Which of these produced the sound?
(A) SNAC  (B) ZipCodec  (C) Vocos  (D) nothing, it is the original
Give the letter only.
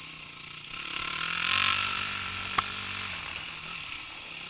D